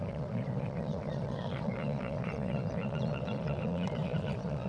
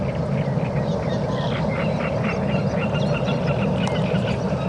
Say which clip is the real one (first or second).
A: second